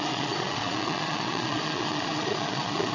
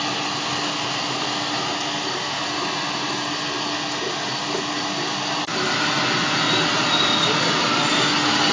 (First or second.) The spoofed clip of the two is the first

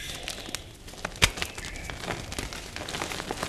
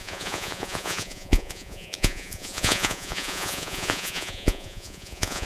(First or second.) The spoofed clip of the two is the second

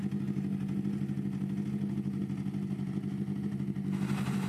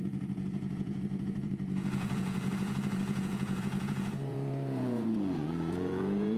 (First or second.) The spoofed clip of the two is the second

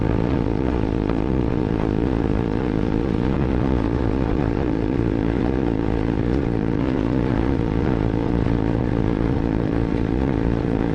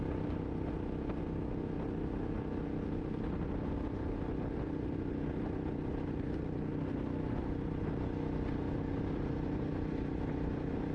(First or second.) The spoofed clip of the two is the first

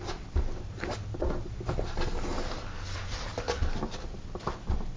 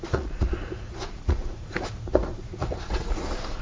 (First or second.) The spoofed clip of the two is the second